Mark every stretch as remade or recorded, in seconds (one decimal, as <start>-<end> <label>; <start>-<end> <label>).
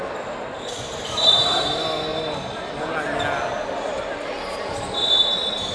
0.0-2.1 recorded; 2.1-2.9 remade; 2.9-5.7 recorded